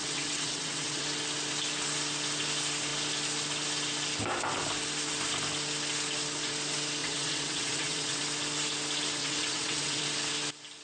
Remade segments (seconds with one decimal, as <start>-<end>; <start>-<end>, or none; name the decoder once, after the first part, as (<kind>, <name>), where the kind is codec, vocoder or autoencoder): 0.0-1.0 (vocoder, WaveNeXt); 7.0-8.2; 9.2-10.0